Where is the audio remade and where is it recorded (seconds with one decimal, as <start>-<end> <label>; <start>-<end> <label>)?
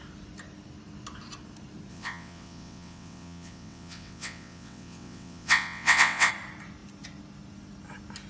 0.0-1.9 recorded; 1.9-6.3 remade; 6.3-8.3 recorded